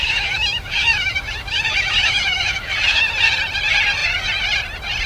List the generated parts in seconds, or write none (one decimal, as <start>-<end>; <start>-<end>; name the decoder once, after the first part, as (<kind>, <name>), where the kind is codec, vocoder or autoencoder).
0.0-3.1 (autoencoder, DAC-VAE)